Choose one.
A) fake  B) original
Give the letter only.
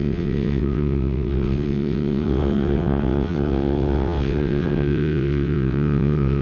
A